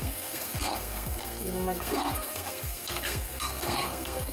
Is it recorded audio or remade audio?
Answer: remade